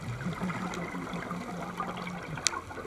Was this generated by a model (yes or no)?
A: no